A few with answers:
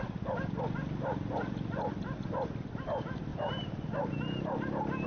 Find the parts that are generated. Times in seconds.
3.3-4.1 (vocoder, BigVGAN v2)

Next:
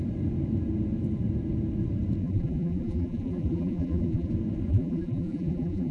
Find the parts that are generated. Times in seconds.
2.2-4.3 (vocoder, BigVGAN v2); 4.7-5.9

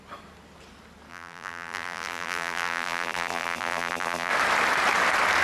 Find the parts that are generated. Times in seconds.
1.1-4.3 (vocoder, BigVGAN v2)

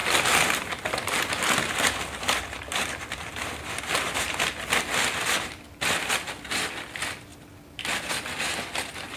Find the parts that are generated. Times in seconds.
0.0-3.8 (vocoder, BigVGAN v2)

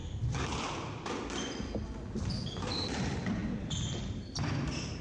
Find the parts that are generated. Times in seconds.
3.4-4.2 (vocoder, BigVGAN v2)

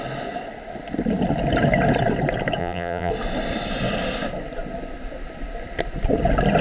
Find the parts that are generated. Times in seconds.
2.6-3.1 (vocoder, BigVGAN v2)

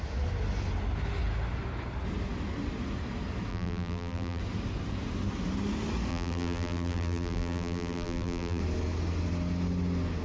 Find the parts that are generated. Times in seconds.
3.5-4.4 (vocoder, BigVGAN v2); 6.1-8.6

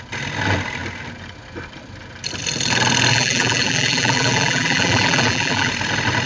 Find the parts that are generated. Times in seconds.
3.1-5.7 (vocoder, BigVGAN v2)